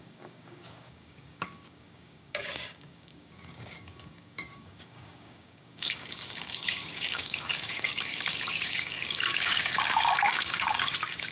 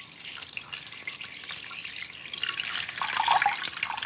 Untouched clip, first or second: second